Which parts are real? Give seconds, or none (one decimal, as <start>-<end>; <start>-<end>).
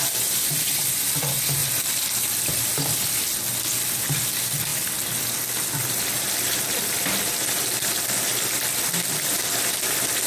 0.0-10.3